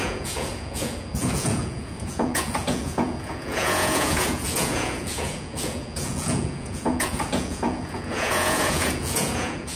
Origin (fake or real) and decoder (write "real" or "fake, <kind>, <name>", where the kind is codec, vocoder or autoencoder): fake, vocoder, Vocos